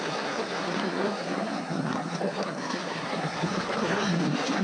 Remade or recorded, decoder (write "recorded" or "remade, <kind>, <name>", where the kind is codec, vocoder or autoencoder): remade, codec, SNAC